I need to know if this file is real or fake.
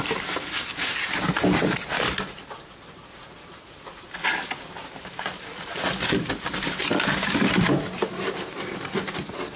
real